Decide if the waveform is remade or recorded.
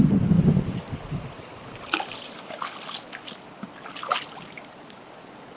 recorded